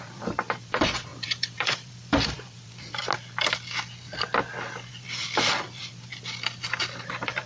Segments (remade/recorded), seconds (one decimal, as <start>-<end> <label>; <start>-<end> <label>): 0.0-3.0 remade; 3.0-4.9 recorded; 4.9-6.1 remade; 6.1-7.0 recorded; 7.0-7.5 remade